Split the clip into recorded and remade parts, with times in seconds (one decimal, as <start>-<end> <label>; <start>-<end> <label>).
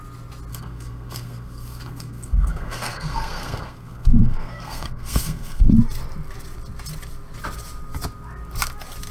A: 0.0-0.5 recorded; 0.5-5.7 remade; 5.7-9.1 recorded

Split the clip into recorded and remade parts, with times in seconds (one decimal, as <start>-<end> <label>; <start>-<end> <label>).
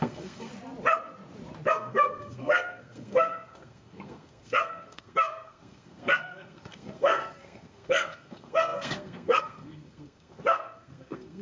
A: 0.0-0.5 remade; 0.5-1.7 recorded; 1.7-11.4 remade